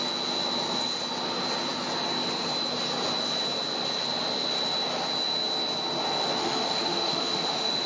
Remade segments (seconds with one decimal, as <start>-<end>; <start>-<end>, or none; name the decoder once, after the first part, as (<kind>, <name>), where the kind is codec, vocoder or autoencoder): 6.4-7.9 (autoencoder, DAC-VAE)